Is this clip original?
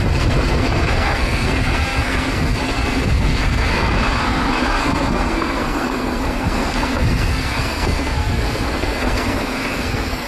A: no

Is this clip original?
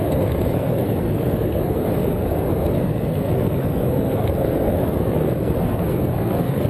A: no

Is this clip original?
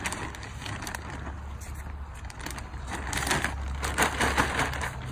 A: yes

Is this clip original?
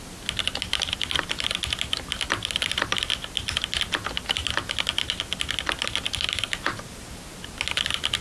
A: yes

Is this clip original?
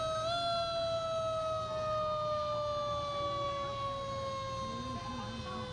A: yes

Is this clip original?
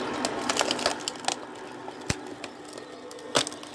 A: yes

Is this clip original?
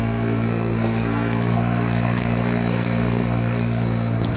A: no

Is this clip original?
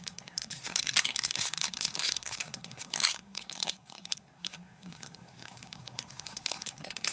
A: no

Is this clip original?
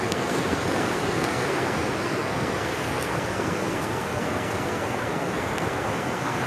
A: no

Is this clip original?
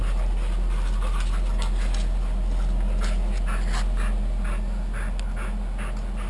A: yes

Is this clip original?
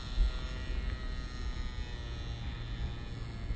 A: yes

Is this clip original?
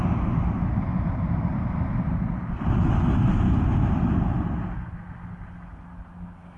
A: yes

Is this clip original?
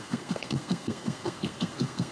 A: no